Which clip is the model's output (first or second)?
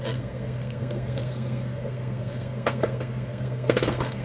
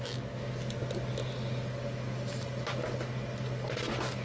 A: first